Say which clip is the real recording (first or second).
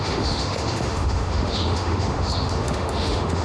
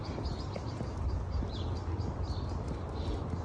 second